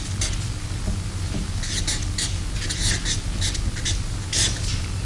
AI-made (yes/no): no